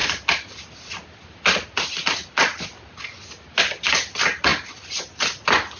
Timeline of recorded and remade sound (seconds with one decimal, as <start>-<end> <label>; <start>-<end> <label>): 0.0-5.8 recorded